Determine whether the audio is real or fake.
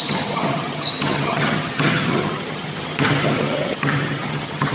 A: fake